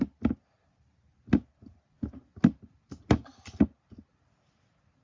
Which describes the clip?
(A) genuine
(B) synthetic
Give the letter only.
A